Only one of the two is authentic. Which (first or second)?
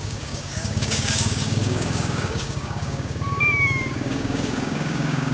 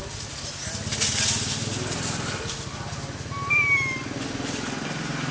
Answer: second